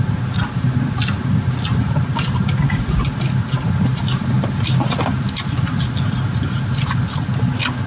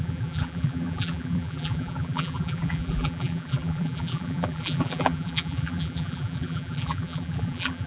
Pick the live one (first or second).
first